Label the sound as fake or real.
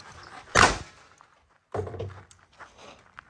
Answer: real